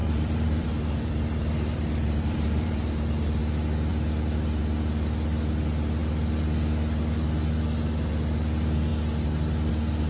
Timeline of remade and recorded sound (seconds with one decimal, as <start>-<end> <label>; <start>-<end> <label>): 0.0-3.4 remade; 3.4-10.1 recorded